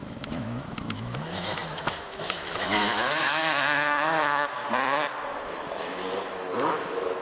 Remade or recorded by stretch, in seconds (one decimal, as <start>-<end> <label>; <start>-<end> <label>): 0.0-4.6 remade; 4.6-7.2 recorded